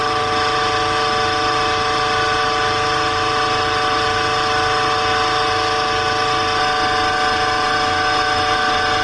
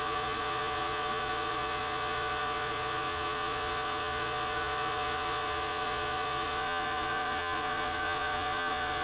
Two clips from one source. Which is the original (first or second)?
first